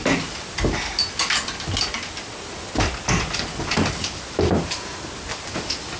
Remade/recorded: recorded